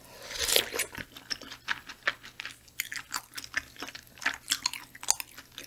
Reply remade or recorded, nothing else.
recorded